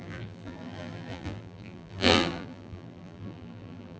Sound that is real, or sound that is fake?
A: fake